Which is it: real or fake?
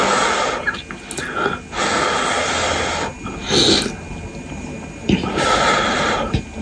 real